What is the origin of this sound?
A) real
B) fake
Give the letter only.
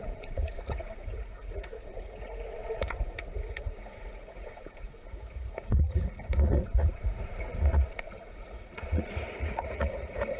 B